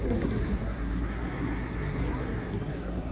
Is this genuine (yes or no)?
no